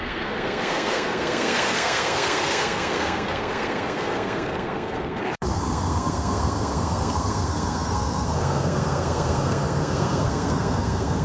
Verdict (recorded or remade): remade